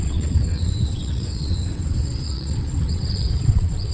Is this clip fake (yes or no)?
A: yes